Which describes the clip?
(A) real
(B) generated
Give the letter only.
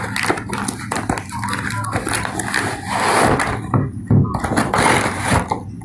A